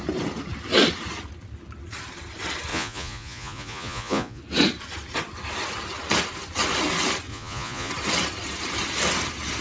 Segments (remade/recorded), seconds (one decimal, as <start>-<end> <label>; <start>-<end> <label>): 0.0-2.7 recorded; 2.7-4.4 remade; 4.4-7.3 recorded; 7.3-7.9 remade; 7.9-9.6 recorded